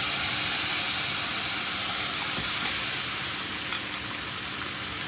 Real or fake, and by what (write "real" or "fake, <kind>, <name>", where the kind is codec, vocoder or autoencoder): real